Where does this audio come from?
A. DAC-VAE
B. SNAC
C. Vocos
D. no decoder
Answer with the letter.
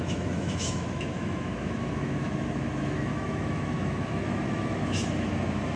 A